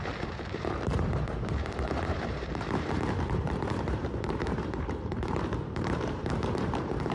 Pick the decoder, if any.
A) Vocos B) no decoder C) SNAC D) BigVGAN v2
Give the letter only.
D